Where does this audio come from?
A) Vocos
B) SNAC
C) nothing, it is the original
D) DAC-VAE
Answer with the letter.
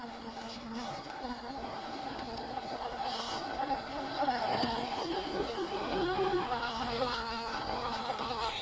B